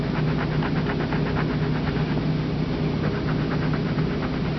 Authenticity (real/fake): real